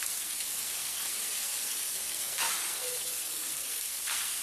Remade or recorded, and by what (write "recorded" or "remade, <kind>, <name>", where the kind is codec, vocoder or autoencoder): remade, codec, SNAC